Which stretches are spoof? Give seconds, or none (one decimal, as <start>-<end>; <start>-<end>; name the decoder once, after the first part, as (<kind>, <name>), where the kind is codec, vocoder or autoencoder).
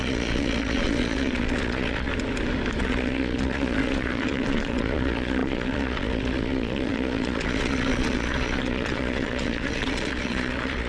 0.0-2.1 (vocoder, Vocos); 2.8-10.9